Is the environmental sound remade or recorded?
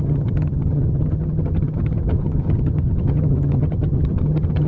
remade